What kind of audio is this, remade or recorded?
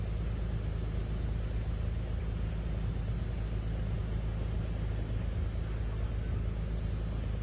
recorded